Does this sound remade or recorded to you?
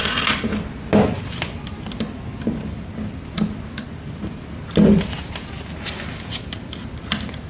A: recorded